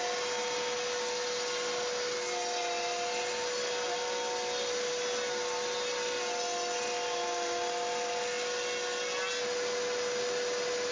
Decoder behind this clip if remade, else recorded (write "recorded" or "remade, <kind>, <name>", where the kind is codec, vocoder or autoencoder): recorded